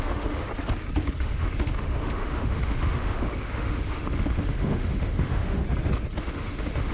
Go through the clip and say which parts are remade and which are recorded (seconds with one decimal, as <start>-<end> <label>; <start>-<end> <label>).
0.0-0.5 remade; 0.5-1.2 recorded; 1.2-5.6 remade; 5.6-6.2 recorded; 6.2-6.9 remade